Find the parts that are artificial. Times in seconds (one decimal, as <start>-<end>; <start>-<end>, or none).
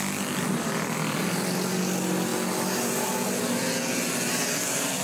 none